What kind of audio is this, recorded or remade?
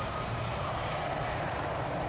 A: remade